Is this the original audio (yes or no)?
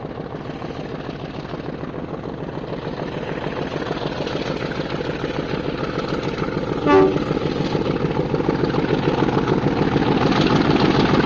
yes